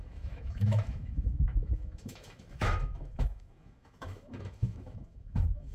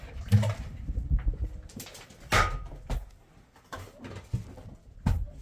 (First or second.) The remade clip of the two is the first